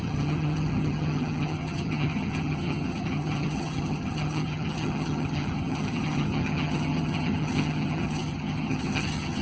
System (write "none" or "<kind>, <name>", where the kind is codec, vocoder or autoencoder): vocoder, HiFi-GAN